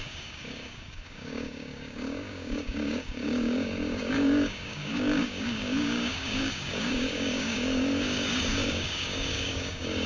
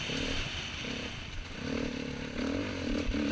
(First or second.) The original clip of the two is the second